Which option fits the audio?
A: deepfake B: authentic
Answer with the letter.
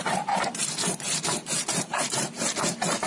A